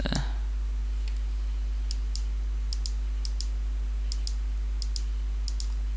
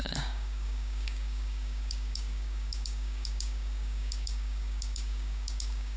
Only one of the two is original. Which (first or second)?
first